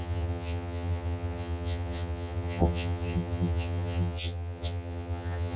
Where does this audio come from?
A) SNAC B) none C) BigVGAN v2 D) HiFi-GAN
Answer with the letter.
D